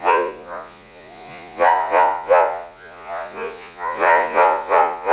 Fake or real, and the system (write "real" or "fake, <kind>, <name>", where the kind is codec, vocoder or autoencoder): fake, vocoder, Vocos